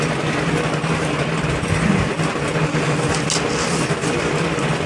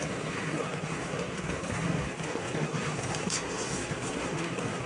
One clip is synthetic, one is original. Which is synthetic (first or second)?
second